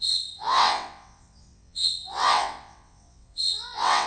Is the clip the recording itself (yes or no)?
no